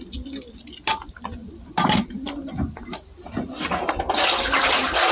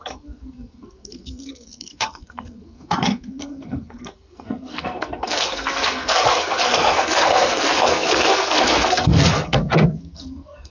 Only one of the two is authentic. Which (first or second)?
first